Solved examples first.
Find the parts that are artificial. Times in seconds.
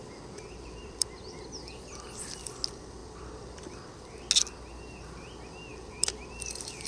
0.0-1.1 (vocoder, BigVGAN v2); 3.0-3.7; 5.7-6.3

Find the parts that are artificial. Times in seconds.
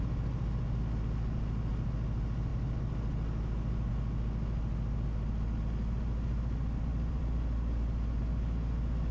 2.5-3.9 (vocoder, BigVGAN v2); 6.9-8.2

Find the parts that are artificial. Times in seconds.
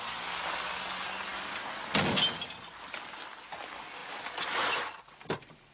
none